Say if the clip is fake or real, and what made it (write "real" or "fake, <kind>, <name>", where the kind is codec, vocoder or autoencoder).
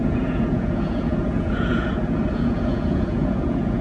fake, vocoder, Vocos